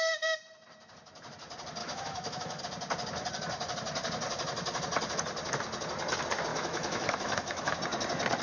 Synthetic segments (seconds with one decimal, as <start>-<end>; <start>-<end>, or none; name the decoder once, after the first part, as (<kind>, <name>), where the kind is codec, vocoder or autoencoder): 1.8-2.6 (autoencoder, DAC-VAE); 6.5-7.8